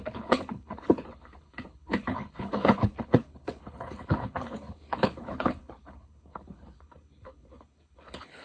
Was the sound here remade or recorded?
remade